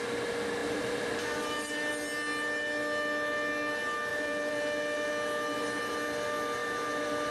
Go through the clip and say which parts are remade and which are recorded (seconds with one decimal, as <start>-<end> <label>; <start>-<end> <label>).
0.0-0.6 recorded; 0.6-1.9 remade; 1.9-4.1 recorded; 4.1-5.1 remade; 5.1-7.3 recorded